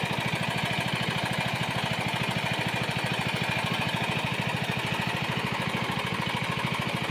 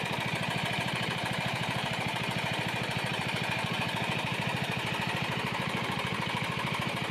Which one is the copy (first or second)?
second